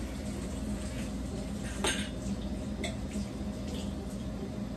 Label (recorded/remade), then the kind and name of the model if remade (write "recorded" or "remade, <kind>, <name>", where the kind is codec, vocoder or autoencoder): recorded